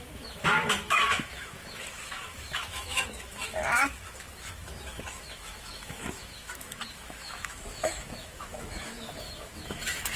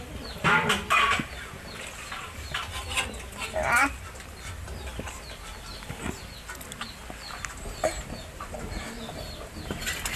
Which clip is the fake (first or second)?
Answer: first